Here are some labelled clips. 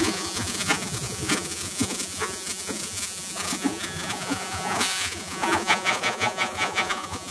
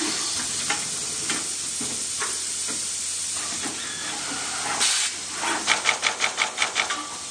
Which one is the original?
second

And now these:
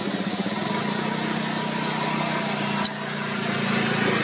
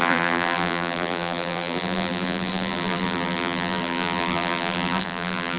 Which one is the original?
first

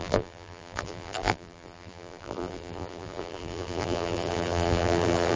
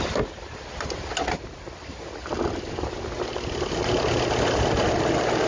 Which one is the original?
second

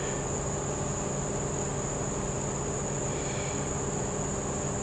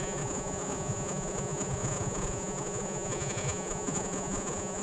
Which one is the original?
first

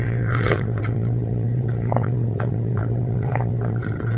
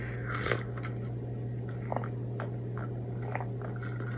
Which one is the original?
second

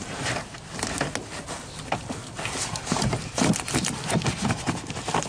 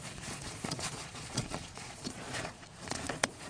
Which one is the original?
first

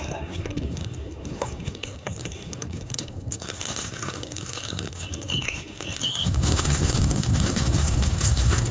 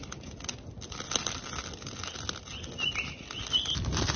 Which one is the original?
second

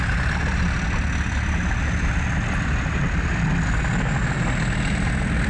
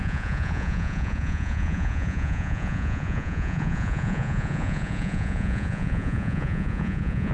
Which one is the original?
first